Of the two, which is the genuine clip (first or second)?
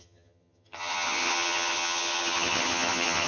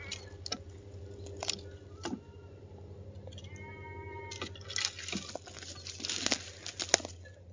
second